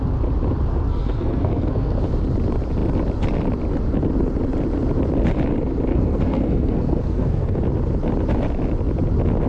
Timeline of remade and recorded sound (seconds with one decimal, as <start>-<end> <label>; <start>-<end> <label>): 0.0-0.7 recorded; 0.7-2.0 remade; 2.0-5.9 recorded; 5.9-7.6 remade; 7.6-9.5 recorded